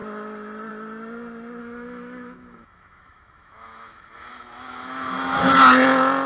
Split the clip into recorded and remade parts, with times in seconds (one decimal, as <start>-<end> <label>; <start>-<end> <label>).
0.0-1.6 recorded; 1.6-5.4 remade; 5.4-6.3 recorded